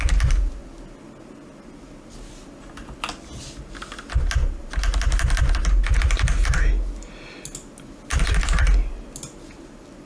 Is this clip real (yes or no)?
yes